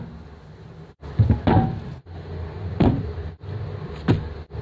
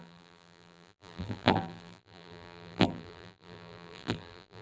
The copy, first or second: second